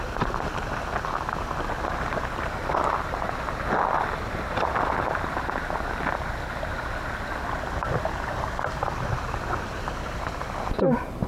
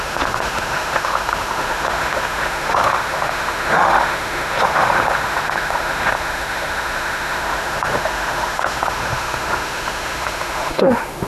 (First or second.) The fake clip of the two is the second